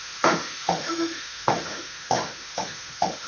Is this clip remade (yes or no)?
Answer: yes